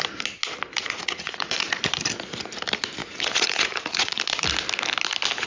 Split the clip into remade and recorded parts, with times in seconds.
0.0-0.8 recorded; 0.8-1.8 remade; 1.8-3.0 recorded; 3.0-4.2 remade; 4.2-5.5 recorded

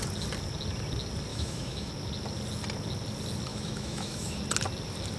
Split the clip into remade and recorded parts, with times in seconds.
0.0-1.3 recorded; 1.3-1.9 remade; 1.9-3.5 recorded; 3.5-4.4 remade; 4.4-5.2 recorded

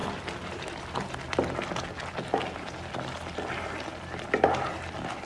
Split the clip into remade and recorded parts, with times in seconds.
0.0-0.8 remade; 0.8-5.3 recorded

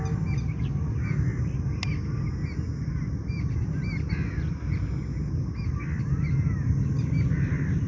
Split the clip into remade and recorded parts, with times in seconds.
0.0-7.9 recorded

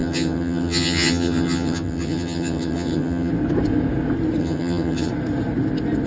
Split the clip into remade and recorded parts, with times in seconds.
0.0-3.3 remade; 3.3-4.4 recorded; 4.4-5.1 remade; 5.1-6.1 recorded